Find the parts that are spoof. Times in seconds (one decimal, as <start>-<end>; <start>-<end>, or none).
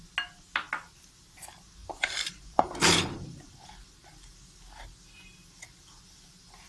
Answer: 1.8-3.4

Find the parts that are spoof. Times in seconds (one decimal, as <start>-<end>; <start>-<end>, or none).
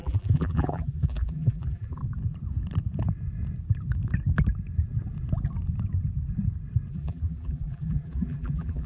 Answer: 0.0-2.0; 6.9-8.9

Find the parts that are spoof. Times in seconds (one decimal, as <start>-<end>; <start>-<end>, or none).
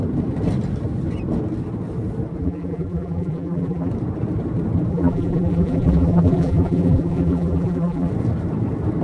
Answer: 2.4-3.9; 4.9-8.1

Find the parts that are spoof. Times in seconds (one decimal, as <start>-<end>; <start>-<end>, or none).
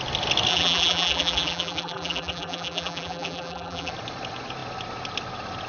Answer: 0.5-3.9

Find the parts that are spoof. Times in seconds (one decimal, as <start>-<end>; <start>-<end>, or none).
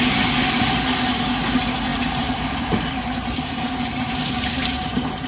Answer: 1.9-5.3